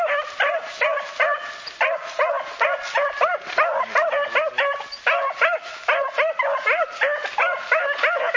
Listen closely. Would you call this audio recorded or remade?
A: recorded